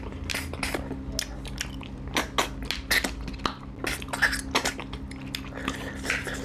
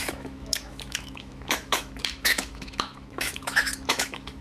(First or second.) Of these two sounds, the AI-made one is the second